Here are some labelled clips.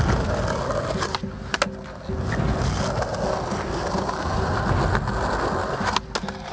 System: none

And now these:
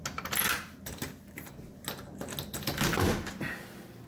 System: none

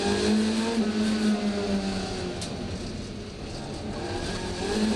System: none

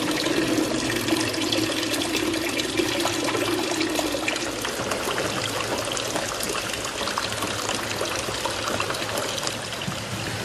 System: none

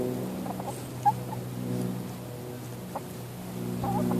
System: none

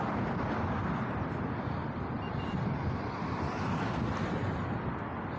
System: none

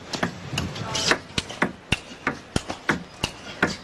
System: none